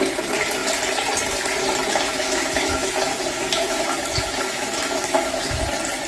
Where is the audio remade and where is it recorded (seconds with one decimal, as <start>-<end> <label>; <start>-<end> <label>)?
0.0-1.9 recorded; 1.9-5.6 remade; 5.6-6.1 recorded